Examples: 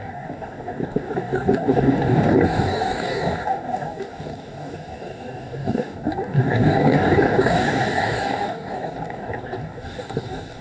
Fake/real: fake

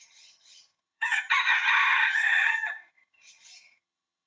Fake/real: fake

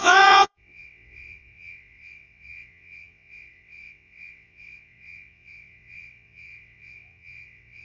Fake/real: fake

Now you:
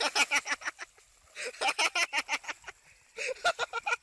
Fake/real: real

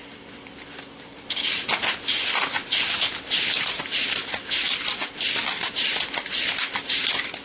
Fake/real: real